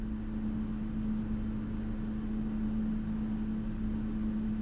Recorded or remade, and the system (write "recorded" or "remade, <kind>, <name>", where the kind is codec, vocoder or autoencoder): recorded